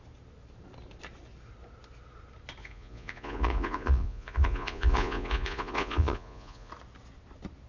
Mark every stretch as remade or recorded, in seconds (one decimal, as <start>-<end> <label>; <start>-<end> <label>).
0.0-2.6 recorded; 2.6-6.7 remade; 6.7-7.7 recorded